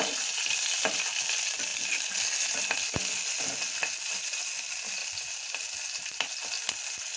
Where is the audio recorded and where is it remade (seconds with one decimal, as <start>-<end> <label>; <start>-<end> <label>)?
0.0-7.2 recorded